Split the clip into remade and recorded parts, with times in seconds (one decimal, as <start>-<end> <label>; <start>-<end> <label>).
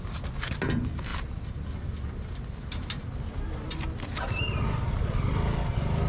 0.0-6.1 recorded